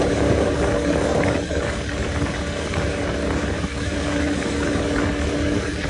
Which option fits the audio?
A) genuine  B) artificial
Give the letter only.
B